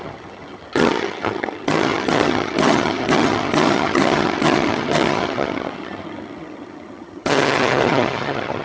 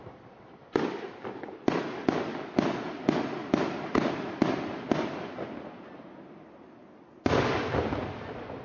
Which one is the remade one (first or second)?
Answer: first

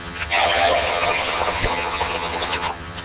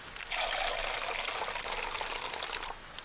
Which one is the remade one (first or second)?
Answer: first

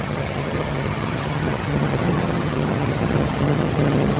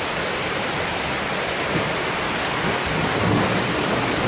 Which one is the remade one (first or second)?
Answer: first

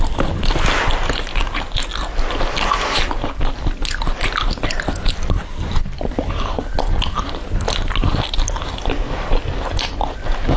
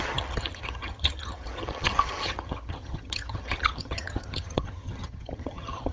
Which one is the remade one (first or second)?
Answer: second